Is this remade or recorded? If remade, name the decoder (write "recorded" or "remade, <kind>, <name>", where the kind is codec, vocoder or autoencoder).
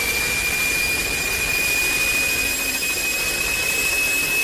recorded